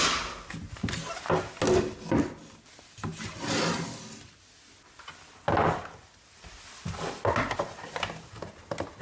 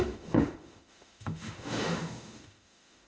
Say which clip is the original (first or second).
first